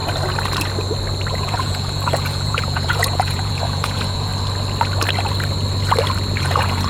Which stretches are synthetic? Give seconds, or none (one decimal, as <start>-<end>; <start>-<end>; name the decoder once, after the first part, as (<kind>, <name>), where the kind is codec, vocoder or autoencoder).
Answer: 1.3-4.3 (vocoder, Vocos); 6.4-6.9